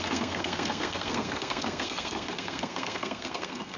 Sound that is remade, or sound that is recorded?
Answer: remade